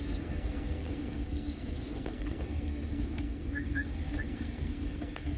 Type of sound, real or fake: fake